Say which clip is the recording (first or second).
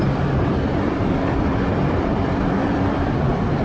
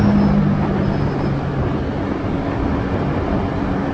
second